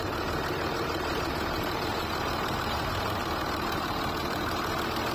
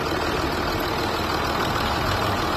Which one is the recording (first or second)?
second